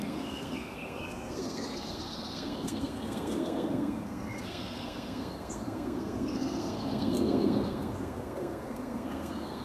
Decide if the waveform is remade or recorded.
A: remade